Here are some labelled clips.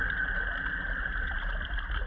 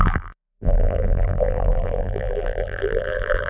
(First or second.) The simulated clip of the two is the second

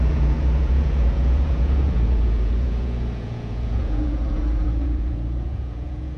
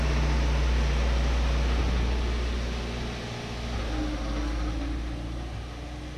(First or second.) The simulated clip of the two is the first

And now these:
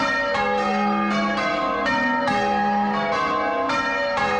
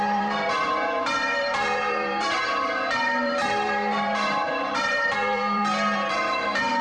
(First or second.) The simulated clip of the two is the second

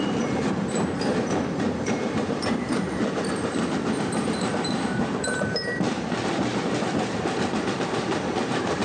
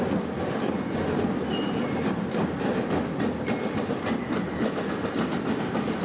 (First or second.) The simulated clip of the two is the first